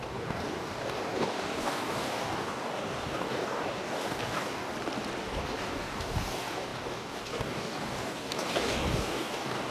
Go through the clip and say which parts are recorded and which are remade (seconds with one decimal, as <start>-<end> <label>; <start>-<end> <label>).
0.0-4.7 remade; 4.7-5.2 recorded; 5.2-9.7 remade